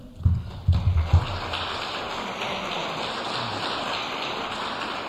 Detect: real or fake real